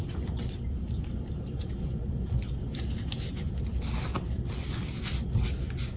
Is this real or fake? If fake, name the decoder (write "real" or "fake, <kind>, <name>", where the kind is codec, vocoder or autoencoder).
real